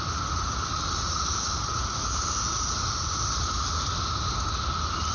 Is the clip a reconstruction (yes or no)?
no